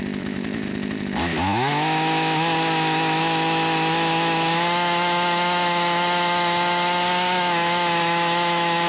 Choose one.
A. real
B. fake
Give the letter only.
B